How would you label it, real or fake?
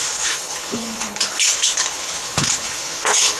fake